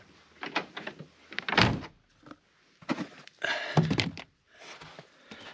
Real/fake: real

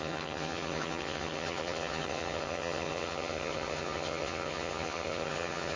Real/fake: fake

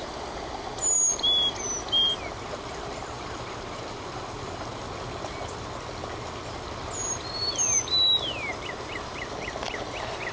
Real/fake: real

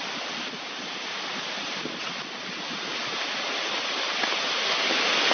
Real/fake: real